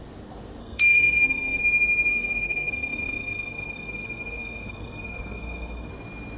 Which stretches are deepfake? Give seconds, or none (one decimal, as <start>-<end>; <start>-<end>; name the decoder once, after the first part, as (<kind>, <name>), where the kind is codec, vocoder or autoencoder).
0.6-1.6 (codec, SNAC); 2.1-5.9